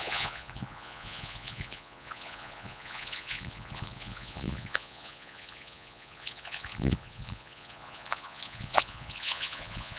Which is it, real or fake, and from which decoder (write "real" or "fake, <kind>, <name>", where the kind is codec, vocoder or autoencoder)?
fake, vocoder, Vocos